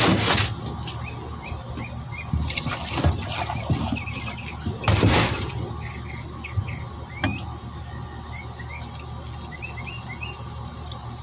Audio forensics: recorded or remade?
recorded